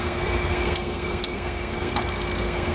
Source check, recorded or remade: remade